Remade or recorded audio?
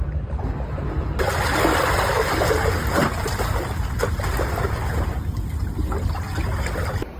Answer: recorded